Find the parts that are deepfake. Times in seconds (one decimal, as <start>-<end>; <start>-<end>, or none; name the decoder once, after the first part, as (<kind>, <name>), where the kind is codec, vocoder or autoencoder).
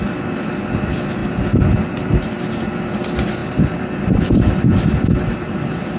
1.2-2.7 (vocoder, BigVGAN v2); 3.4-6.0